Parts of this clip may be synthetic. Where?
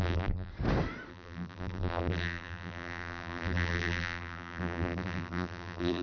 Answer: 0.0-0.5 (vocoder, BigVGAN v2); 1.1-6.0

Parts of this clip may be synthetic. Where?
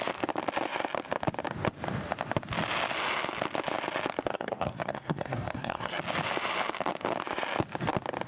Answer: 4.3-6.0 (codec, SNAC)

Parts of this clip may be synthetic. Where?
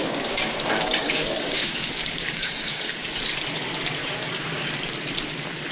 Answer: 0.0-3.2 (codec, DAC); 4.0-4.7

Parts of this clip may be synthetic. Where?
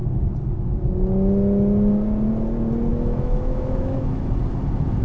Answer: 2.9-4.2 (autoencoder, DAC-VAE)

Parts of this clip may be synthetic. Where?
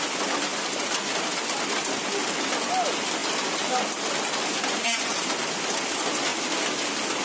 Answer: none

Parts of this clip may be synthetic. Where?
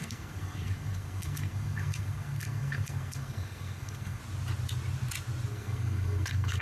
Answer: 0.0-4.2 (codec, SNAC); 5.5-6.6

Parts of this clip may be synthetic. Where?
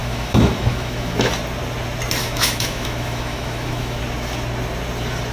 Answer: 0.0-1.3 (autoencoder, DAC-VAE); 2.2-4.0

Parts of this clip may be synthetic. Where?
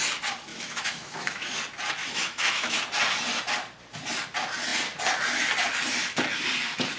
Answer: 0.5-1.5 (autoencoder, DAC-VAE); 2.0-2.8